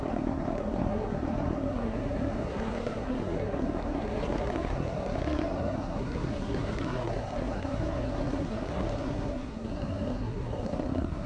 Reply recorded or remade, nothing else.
remade